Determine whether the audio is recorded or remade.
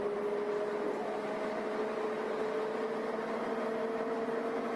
recorded